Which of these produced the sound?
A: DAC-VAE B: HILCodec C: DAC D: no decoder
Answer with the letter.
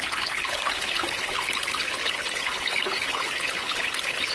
B